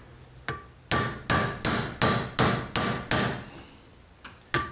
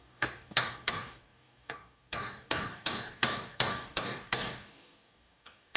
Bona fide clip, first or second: first